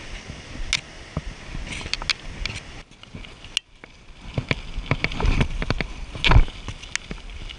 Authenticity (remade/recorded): recorded